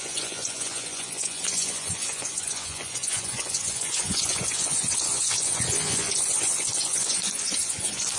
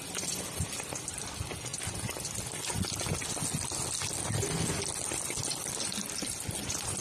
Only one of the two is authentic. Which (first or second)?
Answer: second